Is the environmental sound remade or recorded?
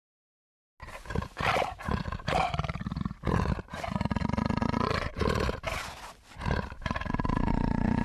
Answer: recorded